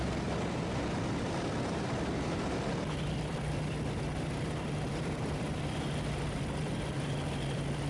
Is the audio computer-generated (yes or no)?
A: yes